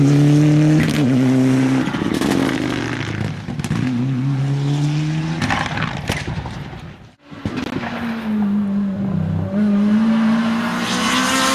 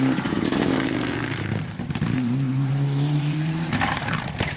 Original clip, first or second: first